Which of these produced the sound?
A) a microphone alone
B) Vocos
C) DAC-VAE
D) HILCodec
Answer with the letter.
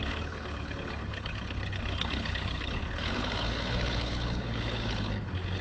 D